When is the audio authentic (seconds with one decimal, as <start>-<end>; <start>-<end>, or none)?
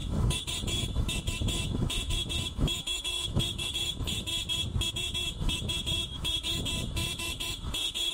4.3-4.9